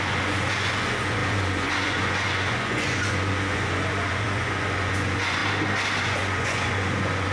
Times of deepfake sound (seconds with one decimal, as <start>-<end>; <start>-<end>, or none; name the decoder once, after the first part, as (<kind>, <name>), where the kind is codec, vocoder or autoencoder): 0.0-5.4 (vocoder, Vocos); 6.0-7.3